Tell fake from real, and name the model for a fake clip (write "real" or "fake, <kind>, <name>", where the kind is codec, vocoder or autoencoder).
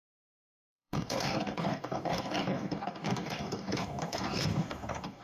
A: fake, codec, DAC